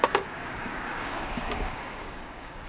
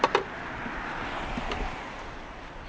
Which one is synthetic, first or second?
first